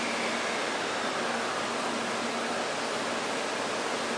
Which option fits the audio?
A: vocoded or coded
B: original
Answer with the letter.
B